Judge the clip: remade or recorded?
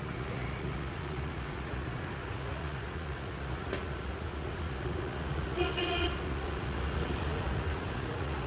remade